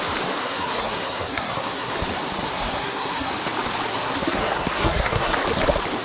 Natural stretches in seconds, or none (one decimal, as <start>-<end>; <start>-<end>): 0.0-0.4; 1.9-2.4; 3.3-3.9; 5.4-6.0